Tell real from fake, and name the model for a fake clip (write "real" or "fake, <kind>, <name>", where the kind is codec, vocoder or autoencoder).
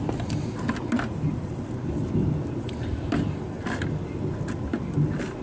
real